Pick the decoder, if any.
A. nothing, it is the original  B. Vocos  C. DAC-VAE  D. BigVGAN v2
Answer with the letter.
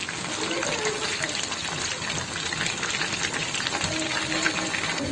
A